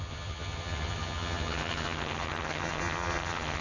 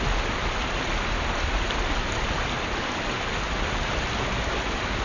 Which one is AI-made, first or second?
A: first